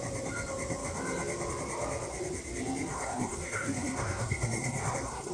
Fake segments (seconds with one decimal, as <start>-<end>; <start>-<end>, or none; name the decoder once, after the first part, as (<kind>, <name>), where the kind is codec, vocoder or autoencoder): 2.9-5.3 (codec, SNAC)